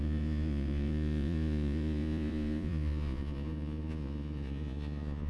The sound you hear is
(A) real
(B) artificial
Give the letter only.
B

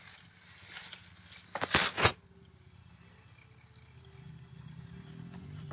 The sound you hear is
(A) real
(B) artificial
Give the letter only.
A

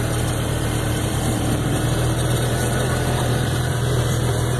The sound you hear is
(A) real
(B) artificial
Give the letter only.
B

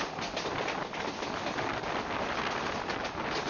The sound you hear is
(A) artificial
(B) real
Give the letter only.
B